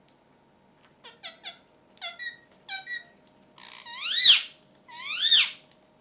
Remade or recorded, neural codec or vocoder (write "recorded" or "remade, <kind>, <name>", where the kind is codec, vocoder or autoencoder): recorded